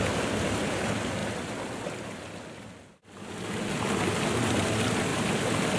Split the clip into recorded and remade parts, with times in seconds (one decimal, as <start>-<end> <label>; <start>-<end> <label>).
0.0-5.1 recorded; 5.1-5.8 remade